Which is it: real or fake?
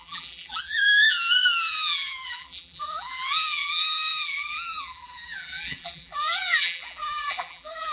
fake